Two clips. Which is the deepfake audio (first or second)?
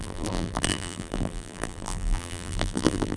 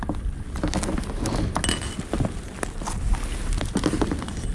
first